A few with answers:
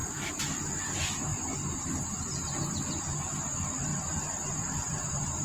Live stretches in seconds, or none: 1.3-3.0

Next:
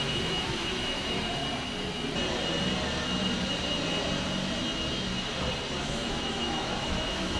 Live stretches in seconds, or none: 1.4-5.8

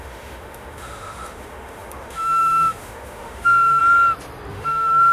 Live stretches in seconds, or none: 3.8-4.5

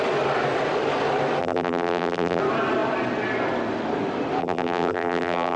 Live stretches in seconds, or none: 0.0-1.4; 2.4-4.4